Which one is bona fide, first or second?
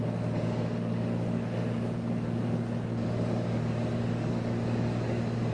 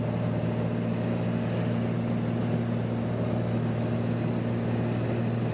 second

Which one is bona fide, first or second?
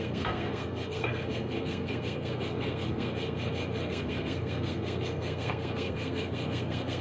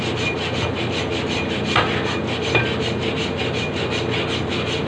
second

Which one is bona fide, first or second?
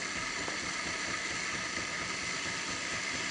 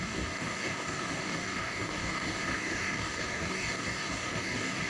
first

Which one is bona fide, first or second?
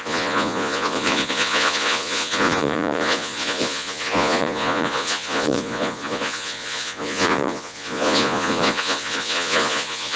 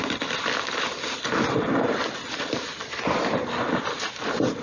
second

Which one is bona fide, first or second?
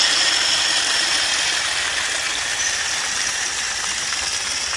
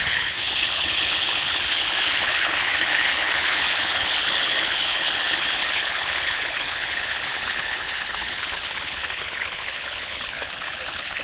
first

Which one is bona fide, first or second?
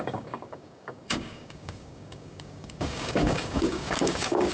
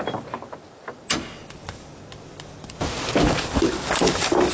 second